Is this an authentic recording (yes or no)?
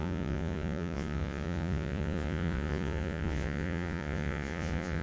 no